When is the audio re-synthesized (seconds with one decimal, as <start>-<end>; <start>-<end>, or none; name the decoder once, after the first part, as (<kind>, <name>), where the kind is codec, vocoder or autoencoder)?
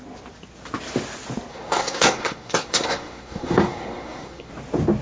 1.5-4.5 (codec, SNAC)